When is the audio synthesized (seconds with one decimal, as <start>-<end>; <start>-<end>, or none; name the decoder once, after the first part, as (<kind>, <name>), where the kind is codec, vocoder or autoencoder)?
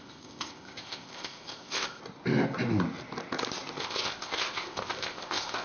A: 0.0-2.0 (codec, ZipCodec); 3.8-5.6